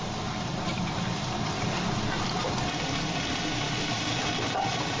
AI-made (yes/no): no